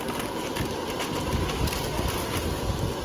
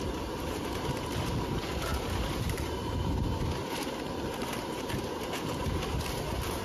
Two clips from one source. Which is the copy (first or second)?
second